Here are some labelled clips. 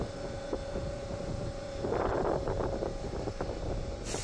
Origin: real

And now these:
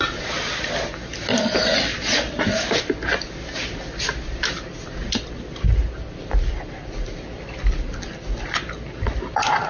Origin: real